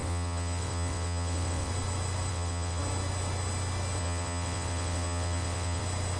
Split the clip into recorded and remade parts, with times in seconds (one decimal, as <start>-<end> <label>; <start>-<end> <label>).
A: 0.0-1.7 remade; 1.7-2.3 recorded; 2.3-2.8 remade; 2.8-4.0 recorded; 4.0-5.8 remade; 5.8-6.2 recorded